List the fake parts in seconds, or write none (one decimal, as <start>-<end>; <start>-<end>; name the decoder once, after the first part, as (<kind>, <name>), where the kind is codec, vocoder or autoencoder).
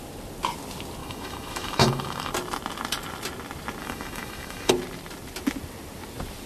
1.0-2.3 (autoencoder, DAC-VAE); 3.8-4.7